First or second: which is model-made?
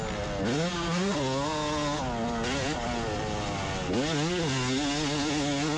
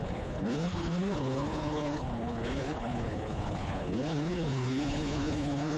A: second